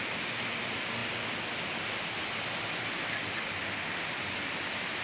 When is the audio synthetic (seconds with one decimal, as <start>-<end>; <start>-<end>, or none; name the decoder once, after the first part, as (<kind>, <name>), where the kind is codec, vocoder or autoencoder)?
none